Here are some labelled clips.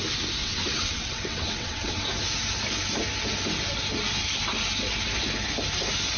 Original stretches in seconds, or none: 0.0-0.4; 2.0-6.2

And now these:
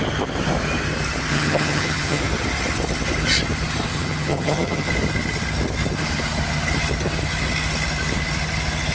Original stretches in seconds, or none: 0.0-1.3; 2.2-3.9; 4.9-8.9

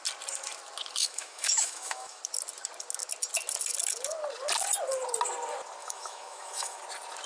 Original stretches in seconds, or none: 0.0-1.0; 2.2-5.8; 6.8-7.3

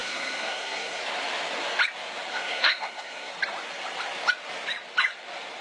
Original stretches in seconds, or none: 1.0-2.3; 3.3-5.6